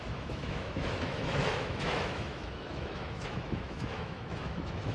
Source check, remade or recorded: remade